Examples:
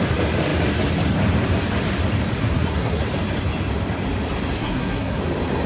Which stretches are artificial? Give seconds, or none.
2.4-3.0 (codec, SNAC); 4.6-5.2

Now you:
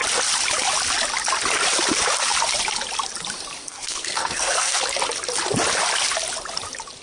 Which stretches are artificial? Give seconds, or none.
3.6-4.8 (codec, SNAC)

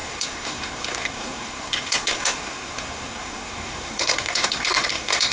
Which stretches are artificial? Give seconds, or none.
0.0-5.3 (codec, SNAC)